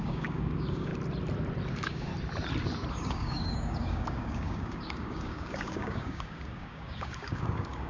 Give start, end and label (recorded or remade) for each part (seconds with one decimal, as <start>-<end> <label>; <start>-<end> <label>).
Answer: 0.0-0.9 remade; 0.9-1.7 recorded; 1.7-2.1 remade; 2.1-2.9 recorded; 2.9-7.9 remade